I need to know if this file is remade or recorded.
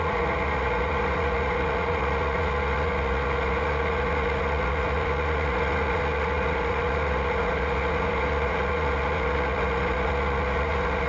remade